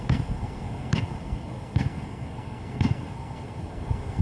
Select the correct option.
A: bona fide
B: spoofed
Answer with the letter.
B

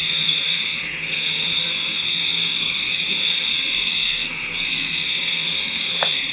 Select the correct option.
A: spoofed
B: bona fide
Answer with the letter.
A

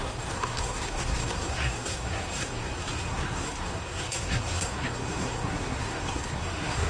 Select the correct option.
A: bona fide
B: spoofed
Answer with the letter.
B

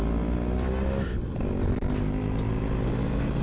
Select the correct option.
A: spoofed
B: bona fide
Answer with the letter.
B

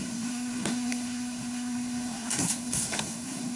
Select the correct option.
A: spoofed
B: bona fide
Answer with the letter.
A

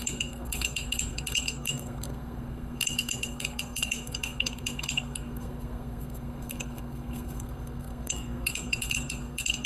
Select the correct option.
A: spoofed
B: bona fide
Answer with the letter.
A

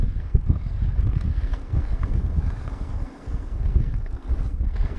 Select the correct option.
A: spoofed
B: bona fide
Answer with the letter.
A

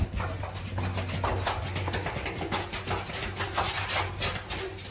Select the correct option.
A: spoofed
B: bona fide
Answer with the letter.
B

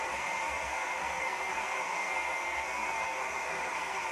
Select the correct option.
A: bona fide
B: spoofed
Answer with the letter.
B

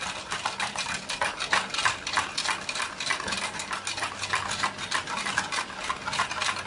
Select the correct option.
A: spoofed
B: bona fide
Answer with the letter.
B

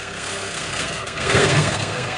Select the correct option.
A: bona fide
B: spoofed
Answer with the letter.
B